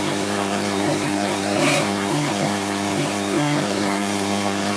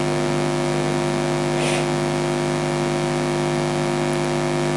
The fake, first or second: first